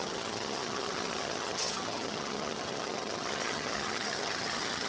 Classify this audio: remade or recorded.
remade